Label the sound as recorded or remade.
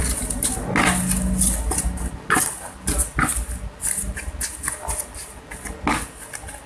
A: recorded